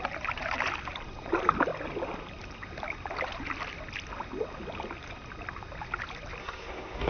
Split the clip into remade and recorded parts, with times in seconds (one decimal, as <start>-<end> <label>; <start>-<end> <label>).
0.0-6.4 recorded; 6.4-7.1 remade